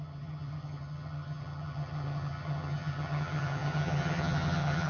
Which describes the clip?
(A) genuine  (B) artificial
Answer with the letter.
B